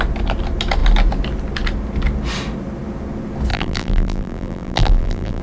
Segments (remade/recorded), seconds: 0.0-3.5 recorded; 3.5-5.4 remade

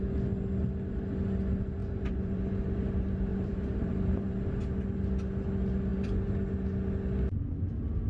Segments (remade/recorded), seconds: 0.0-1.8 recorded; 1.8-2.4 remade; 2.4-3.3 recorded; 3.3-4.6 remade; 4.6-5.9 recorded; 5.9-6.4 remade; 6.4-8.1 recorded